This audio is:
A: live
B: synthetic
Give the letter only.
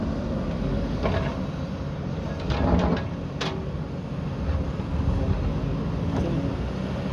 A